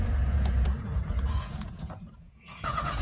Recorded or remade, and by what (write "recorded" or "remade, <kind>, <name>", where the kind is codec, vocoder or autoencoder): remade, vocoder, Vocos